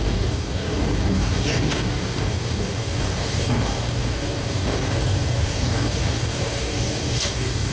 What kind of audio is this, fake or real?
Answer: fake